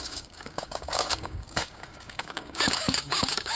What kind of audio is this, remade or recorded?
remade